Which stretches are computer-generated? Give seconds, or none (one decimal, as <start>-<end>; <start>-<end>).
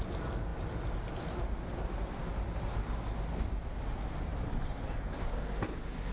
none